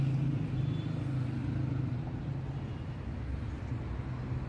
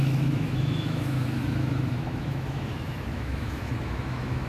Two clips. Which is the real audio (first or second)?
first